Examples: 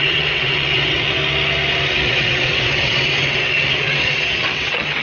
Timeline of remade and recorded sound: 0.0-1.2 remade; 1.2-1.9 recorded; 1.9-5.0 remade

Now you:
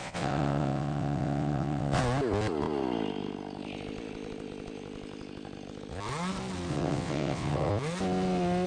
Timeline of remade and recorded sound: 0.0-2.0 remade; 2.0-6.7 recorded; 6.7-7.7 remade; 7.7-8.7 recorded

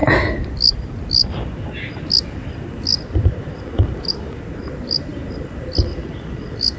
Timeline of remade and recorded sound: 0.0-6.8 recorded

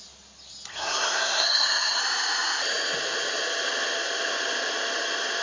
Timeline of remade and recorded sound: 0.0-0.7 recorded; 0.7-2.0 remade; 2.0-5.4 recorded